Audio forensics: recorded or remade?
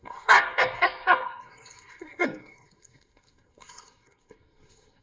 remade